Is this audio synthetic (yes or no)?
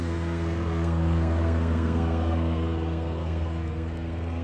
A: yes